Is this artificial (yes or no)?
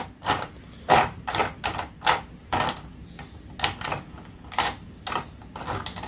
no